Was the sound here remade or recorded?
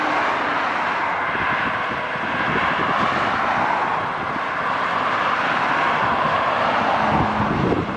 recorded